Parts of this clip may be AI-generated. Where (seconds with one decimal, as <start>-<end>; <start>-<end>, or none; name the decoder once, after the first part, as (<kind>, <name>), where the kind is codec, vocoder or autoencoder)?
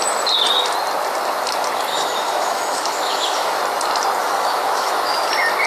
1.9-3.6 (autoencoder, DAC-VAE); 4.2-5.3